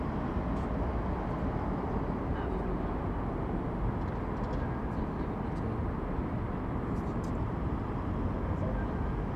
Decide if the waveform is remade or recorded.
recorded